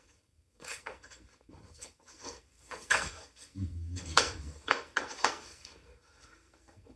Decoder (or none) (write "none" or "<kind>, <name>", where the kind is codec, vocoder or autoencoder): codec, SNAC